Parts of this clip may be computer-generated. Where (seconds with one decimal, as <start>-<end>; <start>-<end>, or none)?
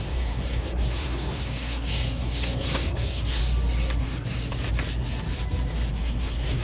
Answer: 0.0-3.4; 4.0-4.4; 5.9-6.6